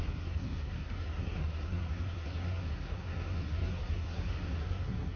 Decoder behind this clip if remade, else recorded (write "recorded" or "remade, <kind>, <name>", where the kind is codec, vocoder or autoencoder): remade, codec, SNAC